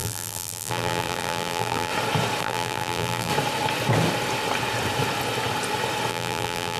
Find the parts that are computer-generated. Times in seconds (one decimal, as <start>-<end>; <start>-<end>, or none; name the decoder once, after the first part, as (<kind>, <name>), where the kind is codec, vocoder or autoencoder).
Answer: 0.0-1.9 (vocoder, BigVGAN v2); 2.4-3.3; 6.1-6.8